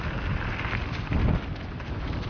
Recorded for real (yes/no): yes